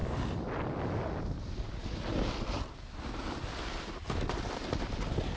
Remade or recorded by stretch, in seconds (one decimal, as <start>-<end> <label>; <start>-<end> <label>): 0.0-5.4 recorded